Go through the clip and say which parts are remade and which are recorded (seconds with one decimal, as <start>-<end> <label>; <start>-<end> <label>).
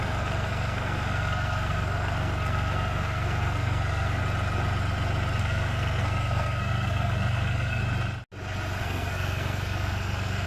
0.0-4.2 remade; 4.2-5.4 recorded; 5.4-7.8 remade; 7.8-8.8 recorded; 8.8-10.5 remade